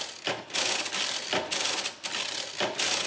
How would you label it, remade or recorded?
recorded